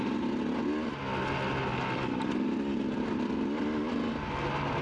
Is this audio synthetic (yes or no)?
no